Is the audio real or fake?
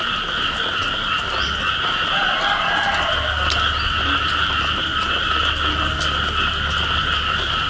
real